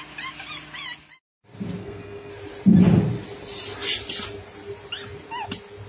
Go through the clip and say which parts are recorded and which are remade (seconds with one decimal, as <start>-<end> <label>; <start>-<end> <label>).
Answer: 0.0-1.8 recorded; 1.8-2.3 remade; 2.3-5.9 recorded